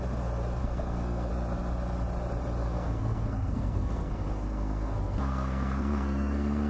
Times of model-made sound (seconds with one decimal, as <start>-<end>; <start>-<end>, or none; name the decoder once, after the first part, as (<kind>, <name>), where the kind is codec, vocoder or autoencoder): 0.6-1.3 (codec, SNAC); 2.6-6.7